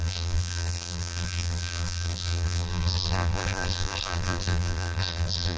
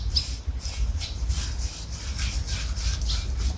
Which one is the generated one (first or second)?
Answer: first